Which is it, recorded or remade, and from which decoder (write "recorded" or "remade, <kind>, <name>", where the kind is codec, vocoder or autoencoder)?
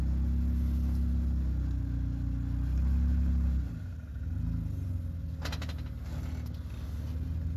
recorded